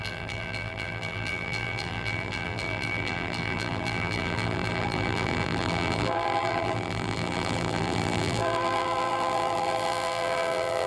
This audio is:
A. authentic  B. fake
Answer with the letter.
B